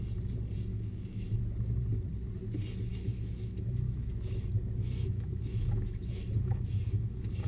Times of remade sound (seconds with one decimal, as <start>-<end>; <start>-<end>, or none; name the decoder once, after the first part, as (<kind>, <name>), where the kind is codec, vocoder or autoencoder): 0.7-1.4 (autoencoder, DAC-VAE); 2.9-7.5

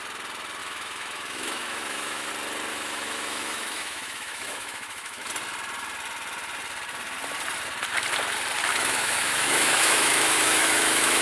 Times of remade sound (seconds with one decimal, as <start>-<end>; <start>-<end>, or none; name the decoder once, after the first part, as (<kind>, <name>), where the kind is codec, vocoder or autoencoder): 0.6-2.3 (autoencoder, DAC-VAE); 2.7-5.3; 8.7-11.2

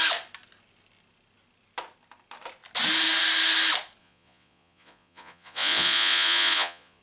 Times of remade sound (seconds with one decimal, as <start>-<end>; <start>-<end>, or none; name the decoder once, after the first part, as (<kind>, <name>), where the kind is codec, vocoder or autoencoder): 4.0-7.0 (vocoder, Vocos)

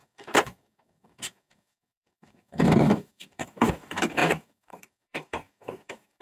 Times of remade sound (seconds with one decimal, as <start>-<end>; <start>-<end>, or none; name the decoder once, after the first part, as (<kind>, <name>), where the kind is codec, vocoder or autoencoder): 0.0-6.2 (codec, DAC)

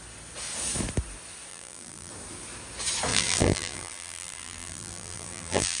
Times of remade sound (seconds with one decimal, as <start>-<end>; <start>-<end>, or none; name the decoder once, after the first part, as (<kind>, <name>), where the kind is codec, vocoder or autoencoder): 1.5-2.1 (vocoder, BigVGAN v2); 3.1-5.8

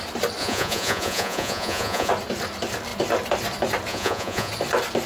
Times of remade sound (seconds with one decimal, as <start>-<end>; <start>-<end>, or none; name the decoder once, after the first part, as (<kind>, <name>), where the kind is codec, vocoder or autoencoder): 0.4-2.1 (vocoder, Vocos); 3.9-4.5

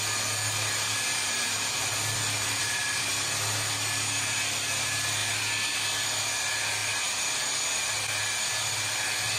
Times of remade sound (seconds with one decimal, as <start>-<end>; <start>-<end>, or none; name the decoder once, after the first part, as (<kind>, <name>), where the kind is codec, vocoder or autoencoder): 1.1-3.1 (vocoder, BigVGAN v2); 6.8-8.2

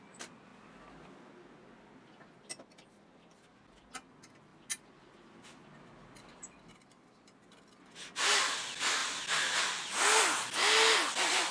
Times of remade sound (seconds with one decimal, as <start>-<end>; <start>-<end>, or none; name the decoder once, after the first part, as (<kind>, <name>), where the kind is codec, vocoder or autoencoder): none